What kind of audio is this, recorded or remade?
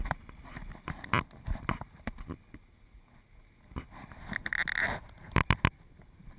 recorded